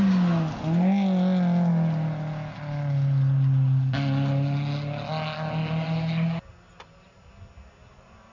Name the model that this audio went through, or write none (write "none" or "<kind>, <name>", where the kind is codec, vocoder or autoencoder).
none